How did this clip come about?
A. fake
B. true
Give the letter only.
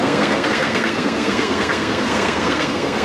A